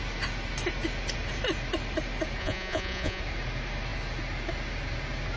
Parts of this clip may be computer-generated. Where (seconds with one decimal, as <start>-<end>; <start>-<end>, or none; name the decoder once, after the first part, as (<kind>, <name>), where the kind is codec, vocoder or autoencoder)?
2.4-3.2 (vocoder, Vocos)